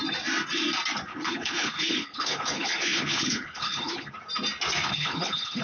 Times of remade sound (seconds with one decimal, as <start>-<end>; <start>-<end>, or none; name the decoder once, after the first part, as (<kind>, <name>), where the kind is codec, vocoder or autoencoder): 1.1-4.1 (codec, HILCodec); 4.9-5.6